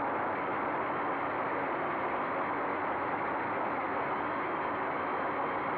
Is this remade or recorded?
recorded